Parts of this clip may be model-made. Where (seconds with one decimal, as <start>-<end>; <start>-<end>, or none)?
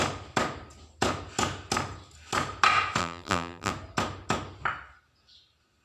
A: 3.0-3.7